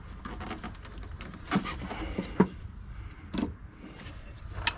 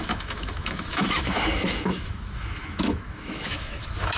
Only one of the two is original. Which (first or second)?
first